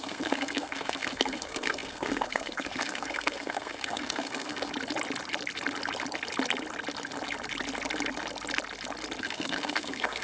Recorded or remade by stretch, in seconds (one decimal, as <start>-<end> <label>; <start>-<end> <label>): 0.0-4.7 remade; 4.7-9.2 recorded; 9.2-10.2 remade